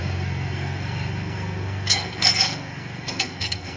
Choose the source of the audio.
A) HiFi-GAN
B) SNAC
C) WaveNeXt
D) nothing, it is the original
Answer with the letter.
B